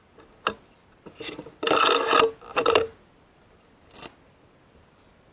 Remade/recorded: recorded